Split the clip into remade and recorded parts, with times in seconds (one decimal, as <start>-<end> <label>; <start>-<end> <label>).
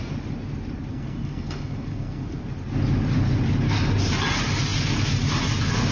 0.0-0.9 recorded; 0.9-2.4 remade; 2.4-5.9 recorded